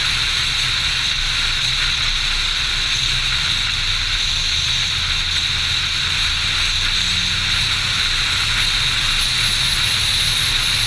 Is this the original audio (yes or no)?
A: yes